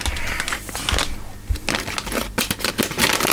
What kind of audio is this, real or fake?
real